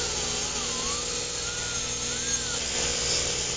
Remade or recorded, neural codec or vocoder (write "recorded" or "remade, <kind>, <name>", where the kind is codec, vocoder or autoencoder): recorded